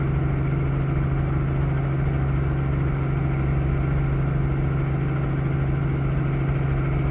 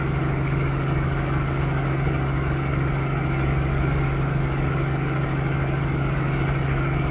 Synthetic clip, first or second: second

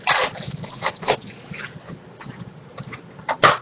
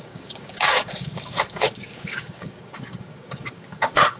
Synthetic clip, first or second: second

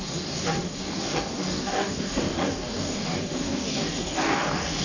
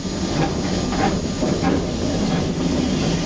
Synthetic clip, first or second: first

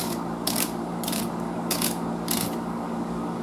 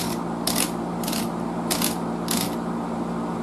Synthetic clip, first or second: first